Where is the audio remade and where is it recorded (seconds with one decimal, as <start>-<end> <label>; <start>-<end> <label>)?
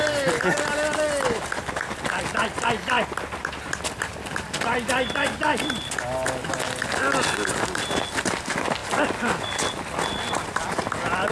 0.0-11.3 recorded